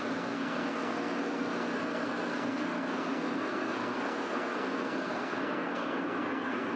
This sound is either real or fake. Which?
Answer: fake